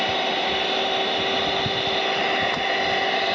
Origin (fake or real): real